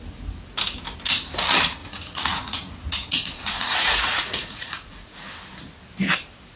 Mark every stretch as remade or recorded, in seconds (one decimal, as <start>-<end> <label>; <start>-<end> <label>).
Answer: 0.0-1.8 recorded; 1.8-5.2 remade; 5.2-6.6 recorded